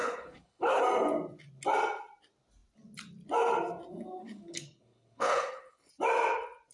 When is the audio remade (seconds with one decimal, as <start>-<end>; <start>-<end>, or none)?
0.0-0.8; 4.2-5.9